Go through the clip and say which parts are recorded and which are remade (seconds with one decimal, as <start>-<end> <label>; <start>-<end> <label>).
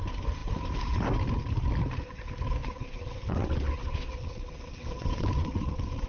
0.0-2.6 recorded; 2.6-6.1 remade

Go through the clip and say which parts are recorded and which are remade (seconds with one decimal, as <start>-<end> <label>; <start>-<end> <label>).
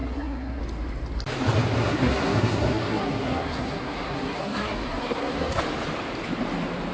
0.0-0.6 remade; 0.6-1.8 recorded; 1.8-5.6 remade; 5.6-6.9 recorded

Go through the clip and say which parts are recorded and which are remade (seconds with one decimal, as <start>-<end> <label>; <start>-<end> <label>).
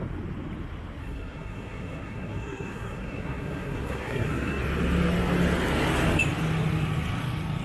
0.0-1.0 recorded; 1.0-4.6 remade; 4.6-7.6 recorded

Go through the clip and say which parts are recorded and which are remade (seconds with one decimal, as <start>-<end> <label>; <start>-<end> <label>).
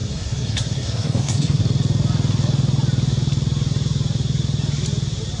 0.0-1.6 remade; 1.6-5.4 recorded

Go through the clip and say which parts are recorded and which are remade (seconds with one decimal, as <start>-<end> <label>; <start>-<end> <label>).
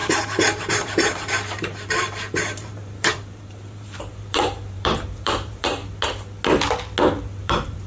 0.0-5.8 remade; 5.8-7.4 recorded; 7.4-7.9 remade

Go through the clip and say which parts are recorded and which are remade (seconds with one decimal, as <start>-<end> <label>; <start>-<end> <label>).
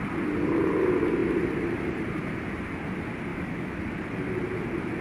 0.0-3.3 recorded; 3.3-3.8 remade; 3.8-5.0 recorded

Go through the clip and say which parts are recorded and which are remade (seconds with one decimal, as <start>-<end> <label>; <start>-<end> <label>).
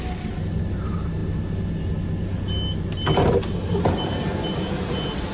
0.0-5.3 recorded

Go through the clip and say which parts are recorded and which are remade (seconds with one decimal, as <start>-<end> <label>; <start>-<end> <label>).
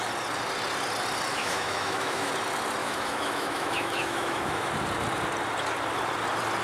0.0-1.3 recorded; 1.3-2.3 remade; 2.3-2.8 recorded; 2.8-4.7 remade; 4.7-6.6 recorded